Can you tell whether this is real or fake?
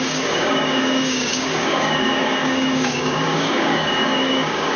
fake